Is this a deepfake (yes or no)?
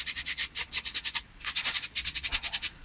yes